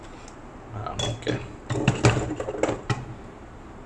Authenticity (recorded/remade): recorded